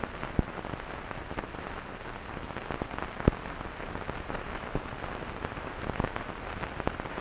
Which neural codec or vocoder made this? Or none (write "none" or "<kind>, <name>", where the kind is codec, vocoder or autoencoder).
none